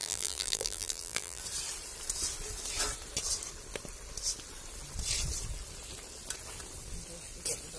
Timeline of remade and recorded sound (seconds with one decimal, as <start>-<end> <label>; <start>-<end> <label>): 0.0-1.4 remade; 1.4-7.8 recorded